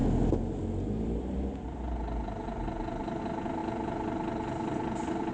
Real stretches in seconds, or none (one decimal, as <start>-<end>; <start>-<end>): 0.0-5.3